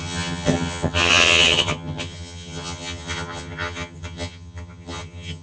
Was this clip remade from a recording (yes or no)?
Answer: yes